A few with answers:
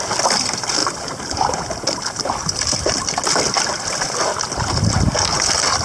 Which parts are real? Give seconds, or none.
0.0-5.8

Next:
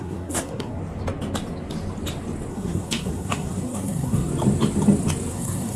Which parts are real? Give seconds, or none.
0.8-2.5; 4.3-5.3